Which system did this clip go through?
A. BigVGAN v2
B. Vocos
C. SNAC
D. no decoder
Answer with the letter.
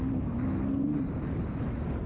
D